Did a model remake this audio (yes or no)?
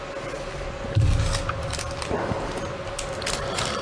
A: no